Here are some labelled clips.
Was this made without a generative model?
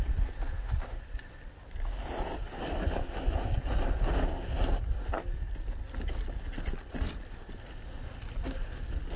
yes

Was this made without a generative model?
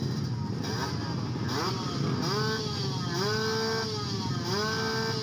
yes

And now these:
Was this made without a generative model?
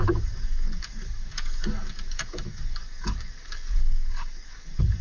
no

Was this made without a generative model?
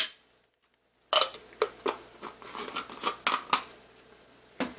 yes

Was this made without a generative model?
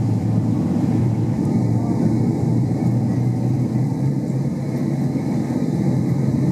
no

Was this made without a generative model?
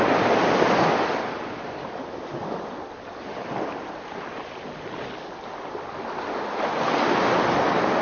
yes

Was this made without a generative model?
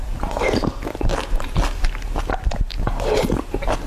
yes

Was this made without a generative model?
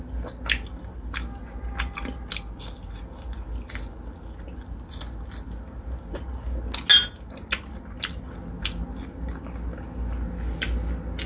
yes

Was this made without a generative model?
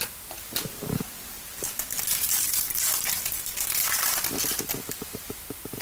yes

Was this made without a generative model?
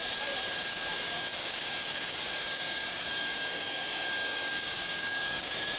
no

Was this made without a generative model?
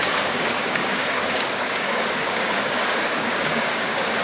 no